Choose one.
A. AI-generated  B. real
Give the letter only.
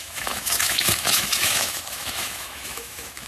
A